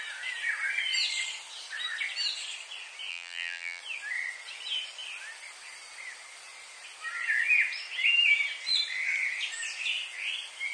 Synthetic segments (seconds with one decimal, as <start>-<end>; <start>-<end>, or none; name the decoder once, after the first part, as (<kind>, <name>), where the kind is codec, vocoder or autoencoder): 3.1-3.8 (vocoder, BigVGAN v2)